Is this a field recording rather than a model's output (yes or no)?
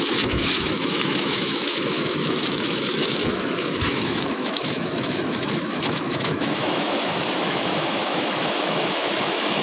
no